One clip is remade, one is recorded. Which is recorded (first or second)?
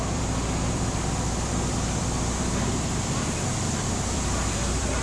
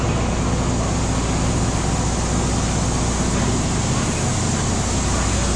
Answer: second